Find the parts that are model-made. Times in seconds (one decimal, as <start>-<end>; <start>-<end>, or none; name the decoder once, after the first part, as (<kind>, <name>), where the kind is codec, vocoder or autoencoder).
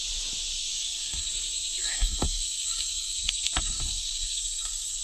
0.7-1.3 (codec, SNAC); 1.8-5.0